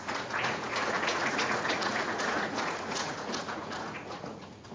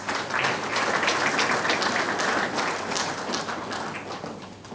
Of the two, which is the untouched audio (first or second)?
second